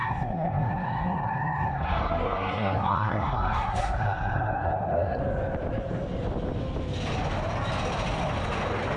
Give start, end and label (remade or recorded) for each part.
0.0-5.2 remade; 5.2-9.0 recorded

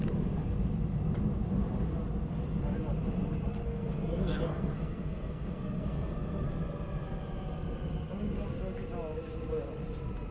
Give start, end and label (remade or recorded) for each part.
0.0-3.5 recorded; 3.5-6.5 remade; 6.5-10.3 recorded